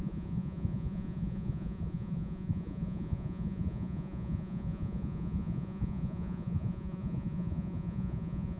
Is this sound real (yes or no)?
no